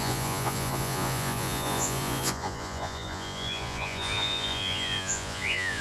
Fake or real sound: fake